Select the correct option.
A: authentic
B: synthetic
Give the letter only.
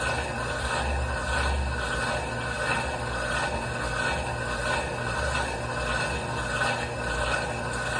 A